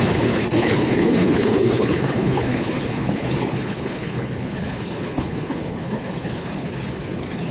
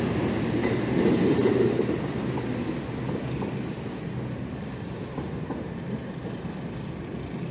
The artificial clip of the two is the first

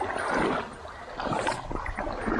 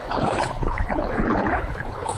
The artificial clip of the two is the second